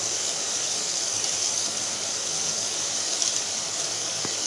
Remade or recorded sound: remade